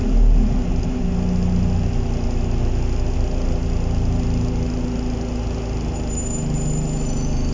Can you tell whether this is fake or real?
real